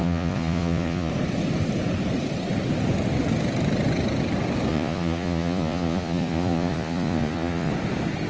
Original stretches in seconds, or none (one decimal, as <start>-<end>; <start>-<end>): 1.1-4.7; 7.7-8.3